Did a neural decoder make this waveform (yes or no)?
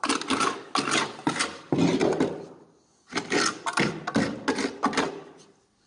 no